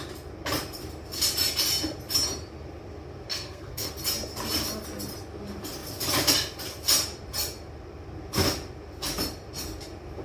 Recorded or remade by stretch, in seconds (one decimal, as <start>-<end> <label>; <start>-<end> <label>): 0.0-3.3 recorded; 3.3-3.9 remade; 3.9-10.2 recorded